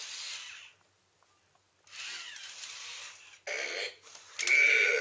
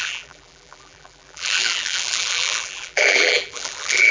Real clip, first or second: first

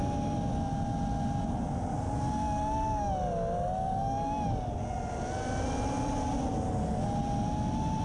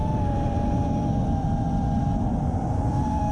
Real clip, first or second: first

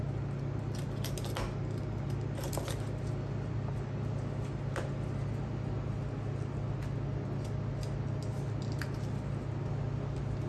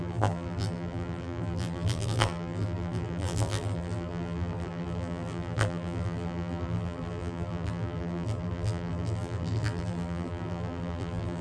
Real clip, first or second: first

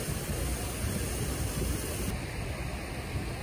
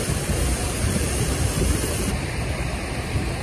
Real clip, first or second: first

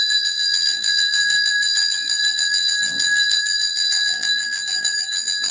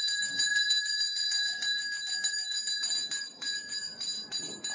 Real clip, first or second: second